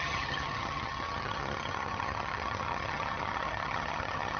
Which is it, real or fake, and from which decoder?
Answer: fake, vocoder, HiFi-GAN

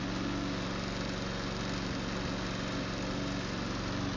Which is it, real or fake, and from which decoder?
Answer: real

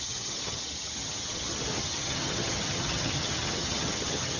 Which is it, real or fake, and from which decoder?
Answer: fake, vocoder, HiFi-GAN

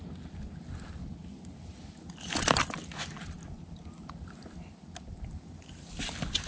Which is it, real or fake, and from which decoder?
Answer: real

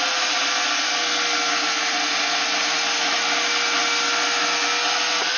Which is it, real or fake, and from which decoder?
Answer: real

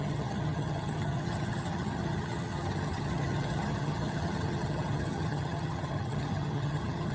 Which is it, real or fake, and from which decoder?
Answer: fake, vocoder, HiFi-GAN